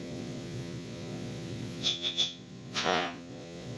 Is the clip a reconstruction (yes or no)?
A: yes